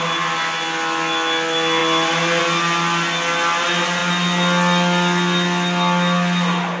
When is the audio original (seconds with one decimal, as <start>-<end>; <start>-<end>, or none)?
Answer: 0.0-6.8

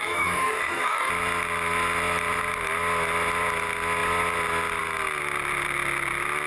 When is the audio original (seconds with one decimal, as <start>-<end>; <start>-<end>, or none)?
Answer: 1.1-6.5

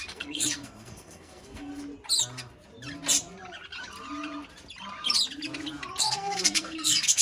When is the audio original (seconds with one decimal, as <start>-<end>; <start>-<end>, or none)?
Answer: 1.7-6.0

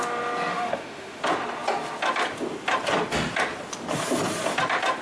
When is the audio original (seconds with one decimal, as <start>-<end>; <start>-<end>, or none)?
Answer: 0.0-0.5; 1.2-5.0

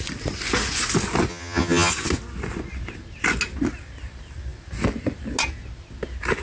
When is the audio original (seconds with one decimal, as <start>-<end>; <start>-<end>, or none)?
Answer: 0.0-1.3; 1.9-6.4